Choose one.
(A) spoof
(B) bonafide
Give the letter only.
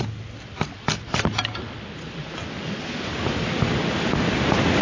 B